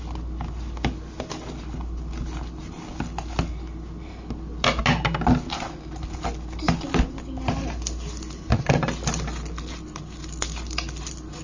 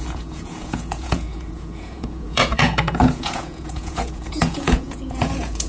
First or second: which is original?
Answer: first